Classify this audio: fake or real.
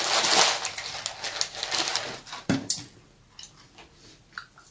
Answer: real